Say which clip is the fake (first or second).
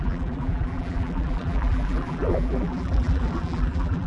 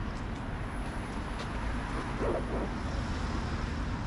first